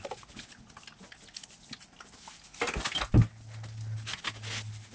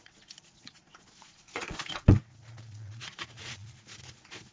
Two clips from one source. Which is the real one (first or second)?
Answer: first